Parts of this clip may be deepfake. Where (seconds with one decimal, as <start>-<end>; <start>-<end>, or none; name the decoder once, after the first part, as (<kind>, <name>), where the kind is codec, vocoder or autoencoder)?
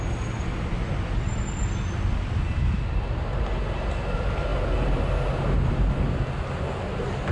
none